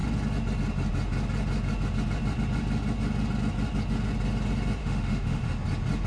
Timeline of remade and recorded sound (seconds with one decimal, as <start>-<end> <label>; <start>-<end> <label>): 0.0-4.8 recorded; 4.8-5.4 remade; 5.4-6.1 recorded